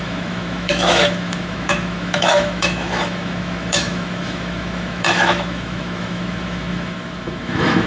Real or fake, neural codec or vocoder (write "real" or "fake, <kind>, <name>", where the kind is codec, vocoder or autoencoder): fake, autoencoder, DAC-VAE